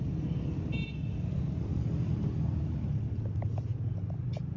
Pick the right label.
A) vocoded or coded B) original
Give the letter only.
B